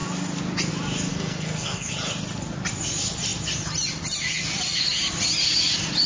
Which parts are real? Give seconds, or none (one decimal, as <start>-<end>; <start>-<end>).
0.0-1.1; 1.9-6.1